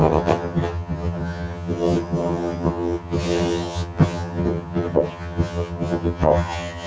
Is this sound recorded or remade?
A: remade